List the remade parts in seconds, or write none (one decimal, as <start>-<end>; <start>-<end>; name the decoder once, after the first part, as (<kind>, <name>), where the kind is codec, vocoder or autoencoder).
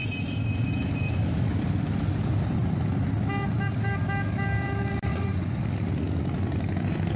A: 5.1-5.6 (vocoder, Vocos)